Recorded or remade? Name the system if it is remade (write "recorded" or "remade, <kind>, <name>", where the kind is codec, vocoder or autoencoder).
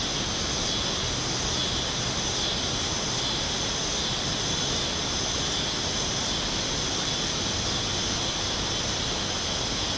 recorded